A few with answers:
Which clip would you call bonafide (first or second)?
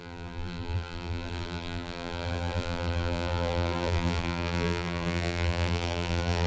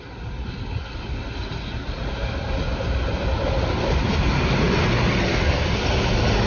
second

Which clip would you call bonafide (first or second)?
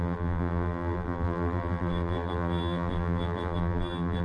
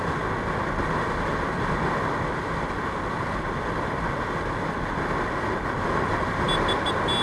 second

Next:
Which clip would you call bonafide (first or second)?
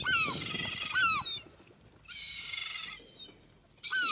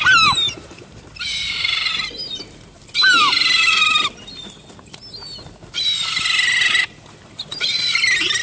first